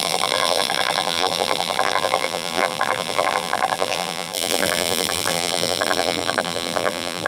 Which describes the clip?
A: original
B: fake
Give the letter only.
B